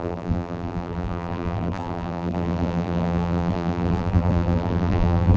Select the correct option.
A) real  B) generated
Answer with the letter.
B